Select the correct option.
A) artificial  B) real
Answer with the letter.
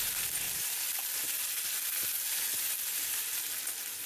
B